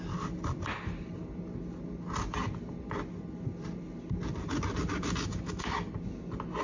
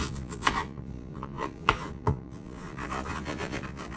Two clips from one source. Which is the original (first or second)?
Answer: first